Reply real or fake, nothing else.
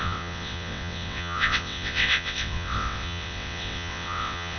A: fake